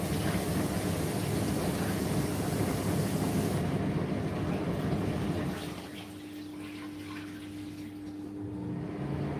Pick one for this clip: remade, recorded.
recorded